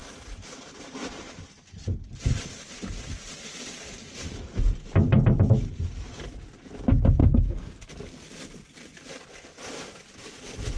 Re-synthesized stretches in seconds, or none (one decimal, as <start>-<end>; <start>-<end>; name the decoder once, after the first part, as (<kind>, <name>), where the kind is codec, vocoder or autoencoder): 7.2-7.9 (codec, SNAC)